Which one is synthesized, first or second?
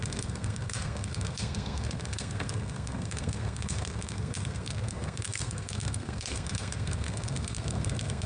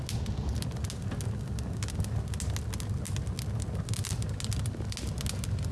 first